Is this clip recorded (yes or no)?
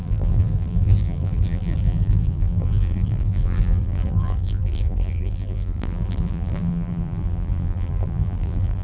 no